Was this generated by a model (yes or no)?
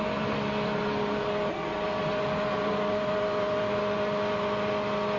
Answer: no